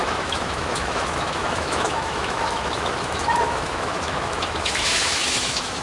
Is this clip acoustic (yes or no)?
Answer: no